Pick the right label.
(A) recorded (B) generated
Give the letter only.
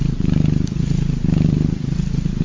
A